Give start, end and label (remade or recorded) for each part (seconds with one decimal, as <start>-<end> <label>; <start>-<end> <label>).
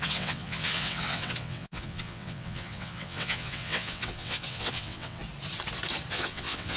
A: 0.0-5.2 remade; 5.2-6.1 recorded; 6.1-6.8 remade